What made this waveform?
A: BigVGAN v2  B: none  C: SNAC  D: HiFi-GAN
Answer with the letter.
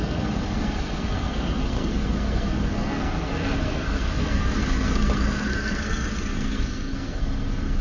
C